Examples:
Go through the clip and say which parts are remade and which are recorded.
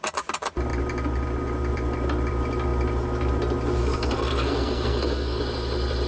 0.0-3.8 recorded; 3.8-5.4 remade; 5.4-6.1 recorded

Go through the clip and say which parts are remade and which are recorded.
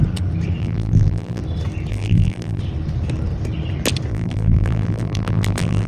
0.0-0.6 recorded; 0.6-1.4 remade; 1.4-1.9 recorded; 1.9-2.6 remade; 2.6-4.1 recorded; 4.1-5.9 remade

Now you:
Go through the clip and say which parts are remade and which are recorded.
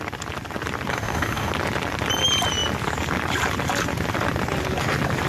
0.0-0.9 recorded; 0.9-1.5 remade; 1.5-5.3 recorded